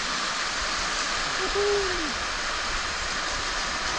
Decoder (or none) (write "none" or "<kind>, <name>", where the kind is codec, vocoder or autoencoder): vocoder, BigVGAN v2